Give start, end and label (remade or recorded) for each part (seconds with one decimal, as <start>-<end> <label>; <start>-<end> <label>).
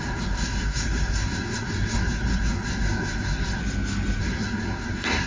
0.0-3.6 remade; 3.6-4.2 recorded; 4.2-5.3 remade